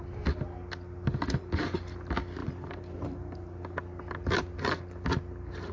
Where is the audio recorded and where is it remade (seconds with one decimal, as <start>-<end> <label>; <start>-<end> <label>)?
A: 0.0-5.7 recorded